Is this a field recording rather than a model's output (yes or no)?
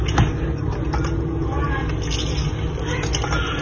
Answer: yes